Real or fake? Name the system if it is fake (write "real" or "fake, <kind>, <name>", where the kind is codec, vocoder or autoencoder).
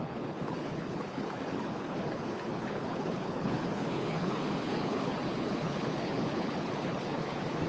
fake, codec, HILCodec